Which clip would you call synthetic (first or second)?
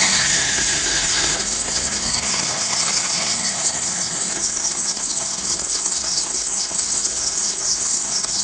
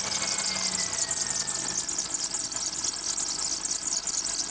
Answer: first